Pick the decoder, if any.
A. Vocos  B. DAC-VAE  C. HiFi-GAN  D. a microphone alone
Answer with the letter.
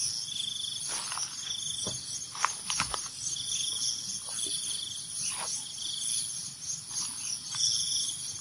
D